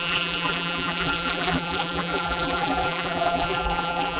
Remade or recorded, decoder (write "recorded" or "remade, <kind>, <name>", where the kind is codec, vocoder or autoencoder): remade, vocoder, BigVGAN v2